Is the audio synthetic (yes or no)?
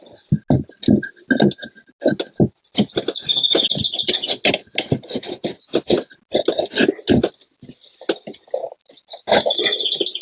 no